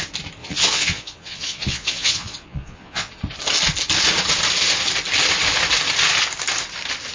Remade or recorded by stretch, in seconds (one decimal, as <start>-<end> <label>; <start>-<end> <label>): 0.0-0.4 recorded; 0.4-3.1 remade; 3.1-7.1 recorded